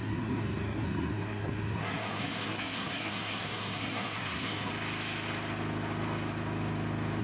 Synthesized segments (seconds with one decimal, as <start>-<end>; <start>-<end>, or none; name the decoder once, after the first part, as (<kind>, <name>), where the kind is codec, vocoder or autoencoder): 0.0-4.7 (codec, SNAC)

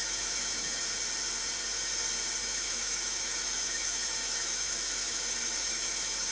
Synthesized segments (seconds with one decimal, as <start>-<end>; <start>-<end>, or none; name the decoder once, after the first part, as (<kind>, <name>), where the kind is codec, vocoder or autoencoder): 0.0-0.8 (autoencoder, DAC-VAE); 2.4-6.3

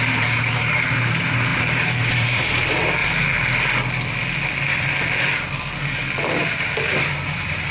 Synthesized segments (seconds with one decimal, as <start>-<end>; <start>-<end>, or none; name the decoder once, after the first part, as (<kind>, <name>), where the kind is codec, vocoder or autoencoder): 0.0-3.0 (vocoder, BigVGAN v2); 6.3-7.7